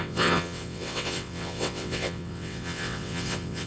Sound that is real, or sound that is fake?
fake